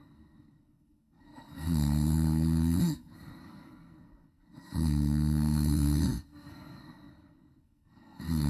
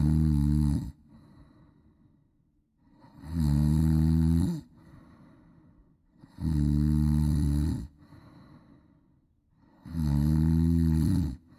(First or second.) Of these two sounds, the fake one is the first